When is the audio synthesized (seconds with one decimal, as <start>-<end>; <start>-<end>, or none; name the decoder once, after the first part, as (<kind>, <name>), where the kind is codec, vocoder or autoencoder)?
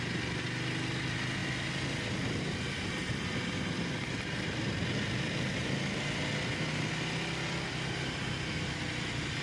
none